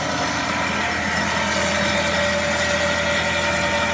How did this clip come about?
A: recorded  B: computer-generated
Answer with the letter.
A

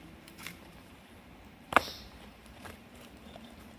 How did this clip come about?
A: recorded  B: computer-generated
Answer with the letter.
B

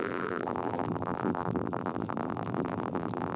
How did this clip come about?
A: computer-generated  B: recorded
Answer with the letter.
A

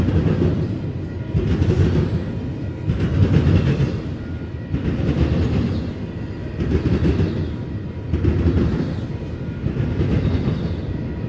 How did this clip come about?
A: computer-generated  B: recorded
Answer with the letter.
B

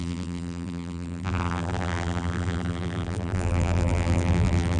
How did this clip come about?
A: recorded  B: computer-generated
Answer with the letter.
B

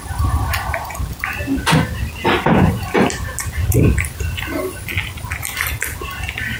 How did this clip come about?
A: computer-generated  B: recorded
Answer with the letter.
B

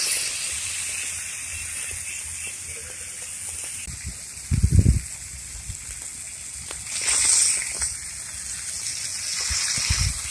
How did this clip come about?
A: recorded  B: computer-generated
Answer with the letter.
A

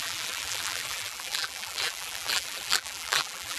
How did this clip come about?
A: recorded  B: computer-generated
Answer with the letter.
B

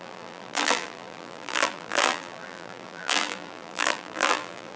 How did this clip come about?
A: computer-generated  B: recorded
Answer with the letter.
A